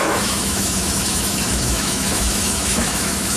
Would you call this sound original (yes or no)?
no